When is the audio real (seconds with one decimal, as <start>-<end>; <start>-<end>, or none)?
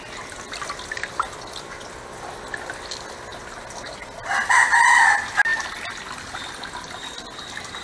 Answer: 0.0-7.8